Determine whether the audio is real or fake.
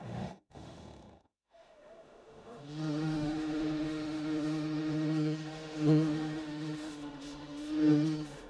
fake